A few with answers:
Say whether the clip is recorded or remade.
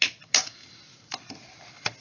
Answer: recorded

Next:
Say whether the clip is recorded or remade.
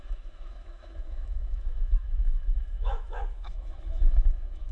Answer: remade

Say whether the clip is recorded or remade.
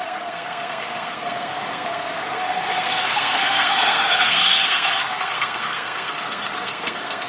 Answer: remade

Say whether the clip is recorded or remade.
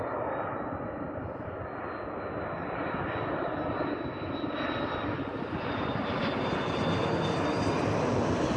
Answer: recorded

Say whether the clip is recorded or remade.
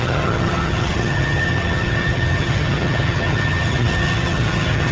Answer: remade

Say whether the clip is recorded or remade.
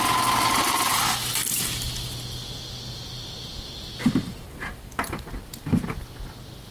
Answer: recorded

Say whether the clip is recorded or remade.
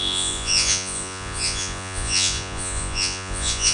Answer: remade